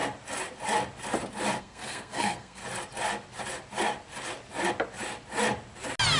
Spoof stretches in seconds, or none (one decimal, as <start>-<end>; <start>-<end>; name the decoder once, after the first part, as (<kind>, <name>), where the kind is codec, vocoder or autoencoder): 1.6-2.6 (codec, SNAC)

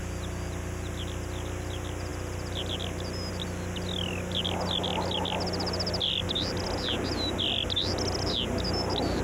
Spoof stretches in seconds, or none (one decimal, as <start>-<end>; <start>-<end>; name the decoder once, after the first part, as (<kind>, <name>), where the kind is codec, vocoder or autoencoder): none